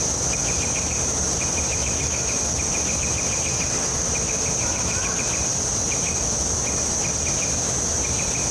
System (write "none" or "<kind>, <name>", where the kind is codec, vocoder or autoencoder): none